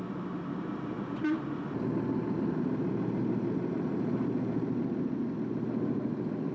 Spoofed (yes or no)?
no